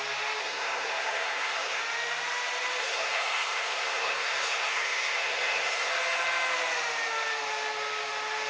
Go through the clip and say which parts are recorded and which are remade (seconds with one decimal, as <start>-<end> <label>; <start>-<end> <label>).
0.0-0.4 recorded; 0.4-1.8 remade; 1.8-2.8 recorded; 2.8-5.9 remade; 5.9-8.5 recorded